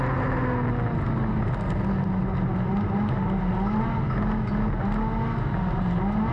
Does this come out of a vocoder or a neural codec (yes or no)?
no